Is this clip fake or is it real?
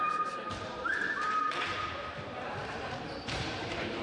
fake